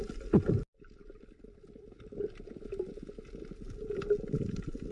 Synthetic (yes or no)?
no